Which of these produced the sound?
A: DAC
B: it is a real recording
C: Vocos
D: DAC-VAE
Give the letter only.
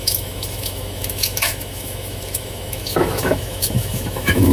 D